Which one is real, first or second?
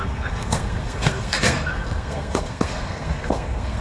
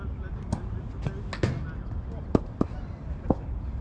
second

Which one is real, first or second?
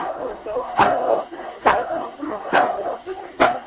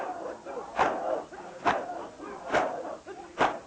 second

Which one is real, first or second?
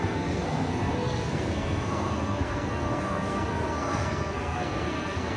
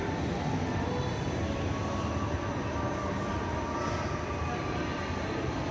second